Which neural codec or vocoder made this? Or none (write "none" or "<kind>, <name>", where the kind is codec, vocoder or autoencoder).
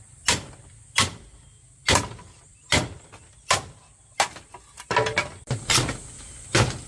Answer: none